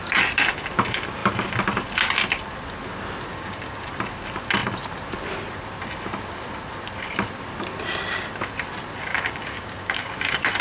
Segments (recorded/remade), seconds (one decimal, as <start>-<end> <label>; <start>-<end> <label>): 0.0-3.3 recorded; 3.3-3.9 remade; 3.9-9.1 recorded; 9.1-10.1 remade; 10.1-10.6 recorded